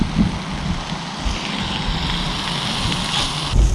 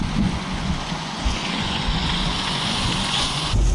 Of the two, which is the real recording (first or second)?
first